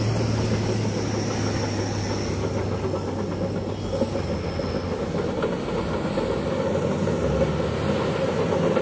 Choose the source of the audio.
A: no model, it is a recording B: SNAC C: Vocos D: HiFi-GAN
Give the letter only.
A